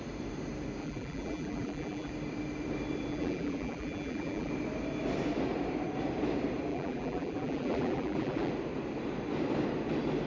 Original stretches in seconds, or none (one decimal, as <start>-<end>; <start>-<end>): 0.0-0.8; 2.1-3.1; 4.5-6.7; 8.5-10.3